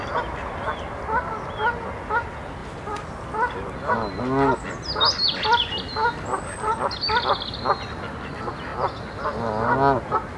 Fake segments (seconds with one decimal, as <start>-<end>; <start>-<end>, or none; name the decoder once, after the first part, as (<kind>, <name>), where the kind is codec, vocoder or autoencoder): none